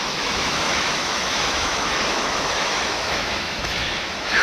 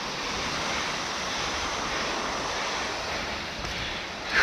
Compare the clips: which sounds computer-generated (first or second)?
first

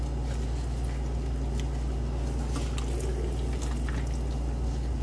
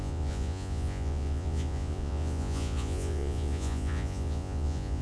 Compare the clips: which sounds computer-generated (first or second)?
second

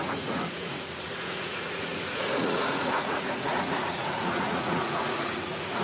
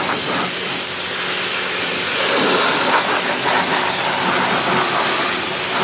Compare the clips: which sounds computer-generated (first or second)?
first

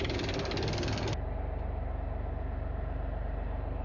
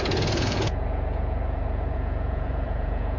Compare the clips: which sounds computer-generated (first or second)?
second